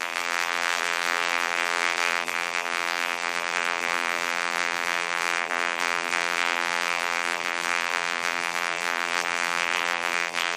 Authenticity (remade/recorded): remade